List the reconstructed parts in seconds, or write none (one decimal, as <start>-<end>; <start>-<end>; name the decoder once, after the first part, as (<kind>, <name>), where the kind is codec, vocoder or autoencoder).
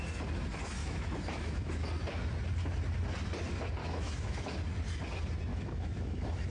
0.8-1.7 (autoencoder, DAC-VAE); 3.8-4.6; 5.5-6.5